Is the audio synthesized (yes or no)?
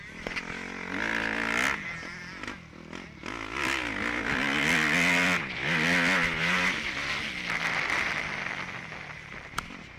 no